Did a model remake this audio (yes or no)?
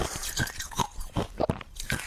yes